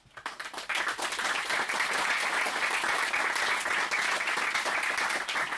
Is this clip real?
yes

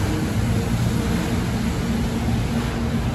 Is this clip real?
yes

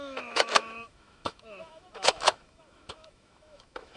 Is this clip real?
no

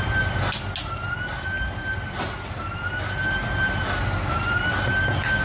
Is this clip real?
yes